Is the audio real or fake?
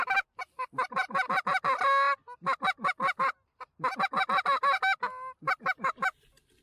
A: real